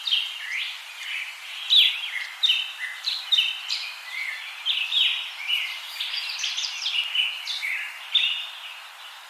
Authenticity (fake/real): fake